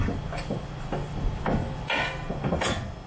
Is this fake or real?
real